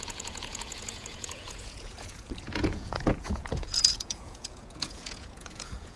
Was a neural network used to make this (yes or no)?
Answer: yes